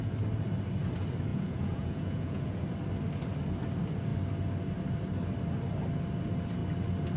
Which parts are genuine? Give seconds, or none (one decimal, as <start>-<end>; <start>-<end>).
0.0-1.3; 2.6-7.2